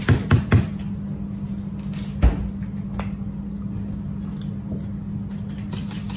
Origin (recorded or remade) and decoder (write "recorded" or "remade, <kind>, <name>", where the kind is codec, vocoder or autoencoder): recorded